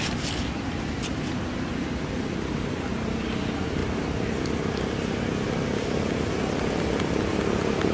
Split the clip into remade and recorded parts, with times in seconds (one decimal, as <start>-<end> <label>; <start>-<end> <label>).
0.0-7.9 recorded